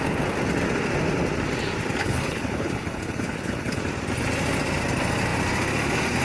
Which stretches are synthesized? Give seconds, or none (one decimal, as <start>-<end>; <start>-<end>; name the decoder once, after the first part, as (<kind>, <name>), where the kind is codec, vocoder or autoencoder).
2.0-3.8 (codec, HILCodec)